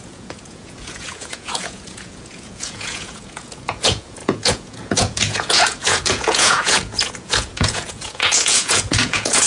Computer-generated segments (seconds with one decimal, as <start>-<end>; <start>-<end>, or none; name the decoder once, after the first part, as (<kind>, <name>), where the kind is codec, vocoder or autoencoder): 0.0-9.5 (vocoder, Vocos)